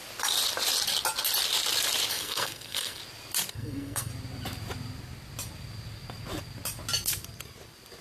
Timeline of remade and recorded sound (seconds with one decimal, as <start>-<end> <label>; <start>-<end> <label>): 0.0-2.1 recorded; 2.1-3.0 remade; 3.0-3.5 recorded; 3.5-4.1 remade; 4.1-8.0 recorded